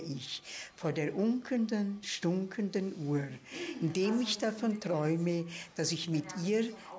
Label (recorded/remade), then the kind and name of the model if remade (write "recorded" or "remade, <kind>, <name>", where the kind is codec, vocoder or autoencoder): recorded